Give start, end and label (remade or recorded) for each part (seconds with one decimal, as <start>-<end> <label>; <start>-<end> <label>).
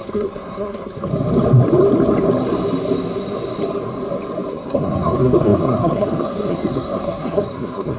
0.0-1.1 remade; 1.1-4.5 recorded; 4.5-8.0 remade